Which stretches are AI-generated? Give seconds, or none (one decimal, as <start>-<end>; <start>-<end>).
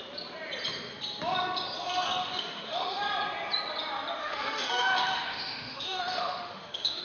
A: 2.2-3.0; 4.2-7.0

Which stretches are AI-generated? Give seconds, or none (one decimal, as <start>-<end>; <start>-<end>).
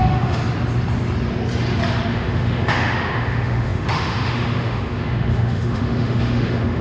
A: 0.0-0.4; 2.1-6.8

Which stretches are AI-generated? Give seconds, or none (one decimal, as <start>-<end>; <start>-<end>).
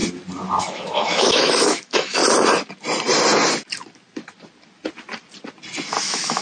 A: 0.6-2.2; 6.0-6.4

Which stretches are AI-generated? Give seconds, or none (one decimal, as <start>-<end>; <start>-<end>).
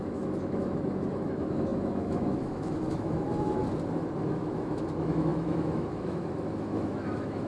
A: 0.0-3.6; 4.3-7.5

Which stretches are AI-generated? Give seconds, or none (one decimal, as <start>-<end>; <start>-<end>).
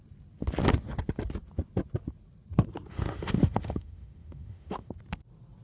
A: 2.9-4.9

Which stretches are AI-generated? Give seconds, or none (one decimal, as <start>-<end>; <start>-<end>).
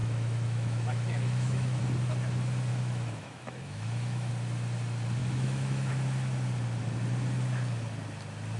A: 0.0-1.8; 2.7-4.3; 5.2-5.9